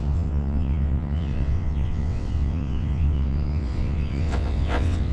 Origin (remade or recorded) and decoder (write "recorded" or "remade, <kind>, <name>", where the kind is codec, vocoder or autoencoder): remade, vocoder, WaveNeXt